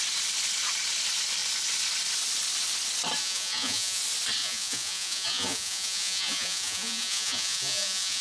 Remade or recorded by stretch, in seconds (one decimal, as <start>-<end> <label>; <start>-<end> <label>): 0.0-3.2 recorded; 3.2-4.0 remade; 4.0-4.4 recorded; 4.4-8.2 remade